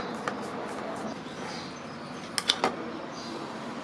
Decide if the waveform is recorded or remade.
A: recorded